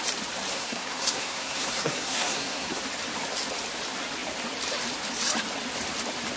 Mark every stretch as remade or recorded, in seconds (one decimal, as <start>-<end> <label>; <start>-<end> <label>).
0.0-0.5 recorded; 0.5-2.8 remade; 2.8-6.4 recorded